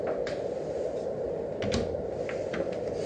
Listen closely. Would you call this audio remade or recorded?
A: recorded